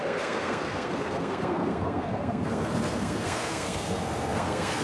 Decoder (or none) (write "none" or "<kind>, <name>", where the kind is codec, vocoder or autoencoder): codec, SNAC